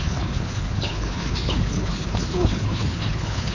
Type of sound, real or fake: fake